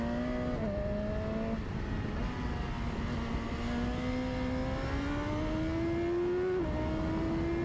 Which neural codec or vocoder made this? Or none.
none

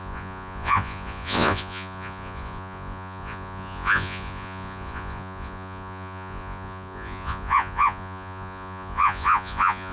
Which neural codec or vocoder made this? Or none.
vocoder, Vocos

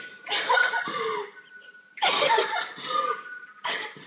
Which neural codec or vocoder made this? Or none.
none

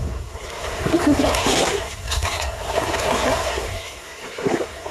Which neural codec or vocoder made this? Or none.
codec, SNAC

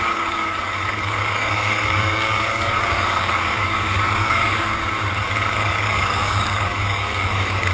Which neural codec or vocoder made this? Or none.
codec, DAC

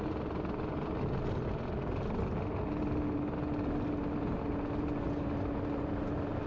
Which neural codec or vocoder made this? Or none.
none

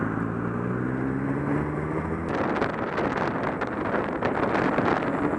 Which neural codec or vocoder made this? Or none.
none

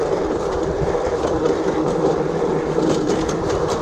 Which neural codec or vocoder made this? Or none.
vocoder, BigVGAN v2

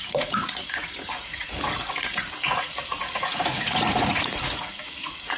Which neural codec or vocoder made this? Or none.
vocoder, Vocos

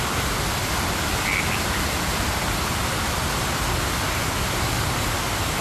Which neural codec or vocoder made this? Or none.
none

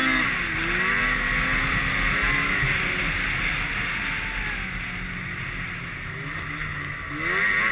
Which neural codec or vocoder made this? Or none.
none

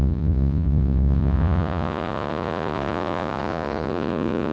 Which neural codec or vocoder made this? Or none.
vocoder, Vocos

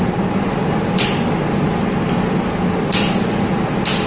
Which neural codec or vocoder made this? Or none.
none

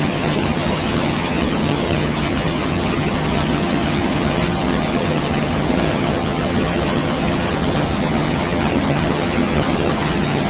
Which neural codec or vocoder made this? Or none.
vocoder, HiFi-GAN